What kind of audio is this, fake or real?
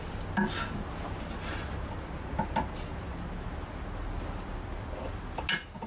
real